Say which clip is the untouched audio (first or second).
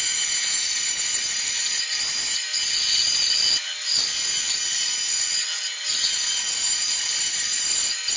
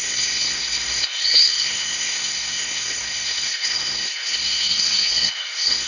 first